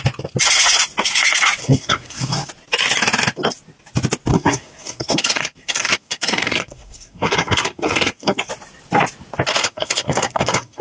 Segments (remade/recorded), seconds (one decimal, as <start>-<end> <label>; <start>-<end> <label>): 0.0-1.6 recorded; 1.6-2.5 remade; 2.5-4.3 recorded; 4.3-8.5 remade; 8.5-9.6 recorded; 9.6-10.8 remade